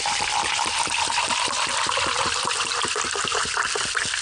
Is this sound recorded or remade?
recorded